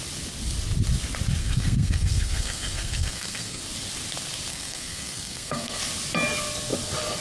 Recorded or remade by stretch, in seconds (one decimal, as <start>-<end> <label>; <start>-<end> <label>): 0.0-1.4 recorded; 1.4-3.6 remade; 3.6-4.5 recorded; 4.5-5.8 remade; 5.8-7.2 recorded